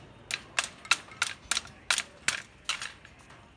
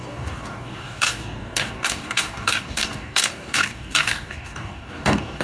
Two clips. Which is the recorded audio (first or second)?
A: first